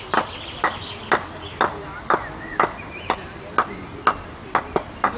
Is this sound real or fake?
real